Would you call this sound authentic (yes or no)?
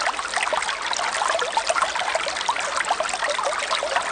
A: yes